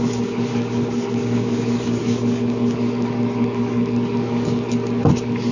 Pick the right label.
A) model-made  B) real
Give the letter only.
A